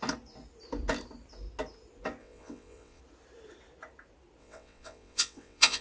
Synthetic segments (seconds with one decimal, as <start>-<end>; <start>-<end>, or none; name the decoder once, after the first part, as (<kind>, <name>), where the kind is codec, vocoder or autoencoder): 2.2-3.0 (vocoder, WaveNeXt); 4.4-5.8